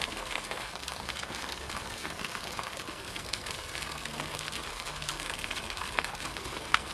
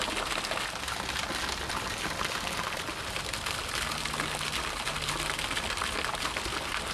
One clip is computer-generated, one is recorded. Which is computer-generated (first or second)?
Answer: first